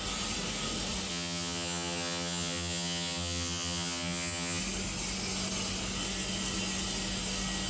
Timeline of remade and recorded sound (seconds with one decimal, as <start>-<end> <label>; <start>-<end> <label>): 0.0-1.1 recorded; 1.1-4.6 remade; 4.6-7.7 recorded